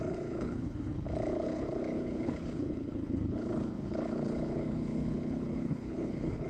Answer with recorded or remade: remade